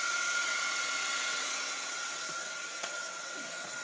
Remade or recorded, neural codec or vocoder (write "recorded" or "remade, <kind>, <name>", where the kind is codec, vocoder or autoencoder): remade, vocoder, WaveNeXt